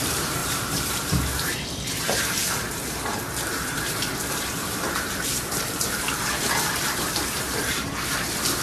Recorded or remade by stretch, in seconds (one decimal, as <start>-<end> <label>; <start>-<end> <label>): 0.0-8.6 remade